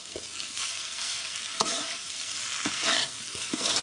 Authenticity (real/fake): fake